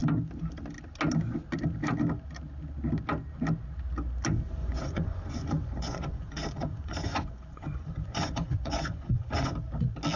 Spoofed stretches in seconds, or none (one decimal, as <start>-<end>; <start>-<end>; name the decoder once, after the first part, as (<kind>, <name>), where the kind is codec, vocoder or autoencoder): 4.6-9.5 (vocoder, Vocos)